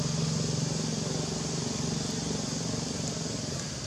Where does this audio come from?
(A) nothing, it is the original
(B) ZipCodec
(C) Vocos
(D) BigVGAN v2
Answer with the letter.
A